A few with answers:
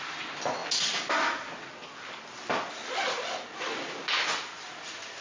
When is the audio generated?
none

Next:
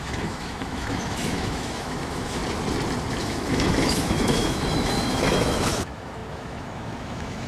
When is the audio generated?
0.0-2.4 (autoencoder, DAC-VAE); 3.2-7.5

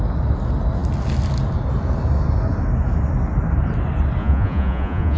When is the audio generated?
4.2-5.2 (vocoder, Vocos)

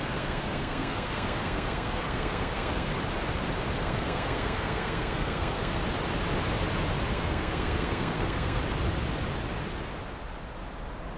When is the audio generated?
0.0-2.9 (codec, SNAC); 3.8-5.8; 7.1-8.6

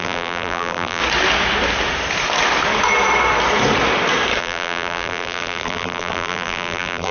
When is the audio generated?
0.0-1.0 (vocoder, BigVGAN v2); 4.4-7.1

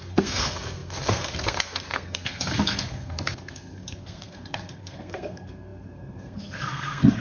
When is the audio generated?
0.0-7.2 (codec, SNAC)